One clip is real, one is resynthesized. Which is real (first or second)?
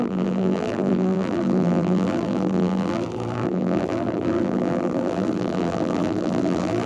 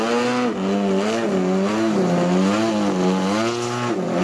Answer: second